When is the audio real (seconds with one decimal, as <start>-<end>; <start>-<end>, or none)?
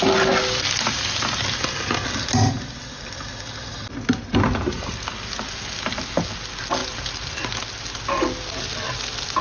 0.0-9.4